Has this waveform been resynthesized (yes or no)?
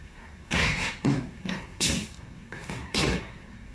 yes